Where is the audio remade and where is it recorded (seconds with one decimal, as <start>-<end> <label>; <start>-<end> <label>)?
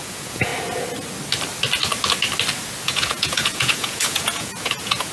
0.0-0.5 remade; 0.5-2.8 recorded; 2.8-5.1 remade